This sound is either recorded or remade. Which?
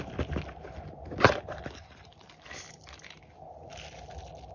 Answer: recorded